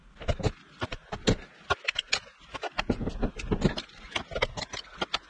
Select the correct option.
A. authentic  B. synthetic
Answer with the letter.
A